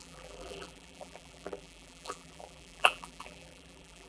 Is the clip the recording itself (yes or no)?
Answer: no